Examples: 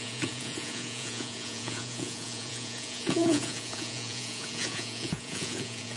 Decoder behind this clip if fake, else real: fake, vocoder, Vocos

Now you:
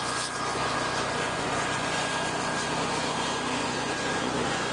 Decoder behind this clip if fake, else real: fake, vocoder, Vocos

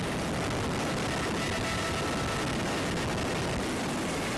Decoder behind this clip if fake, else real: real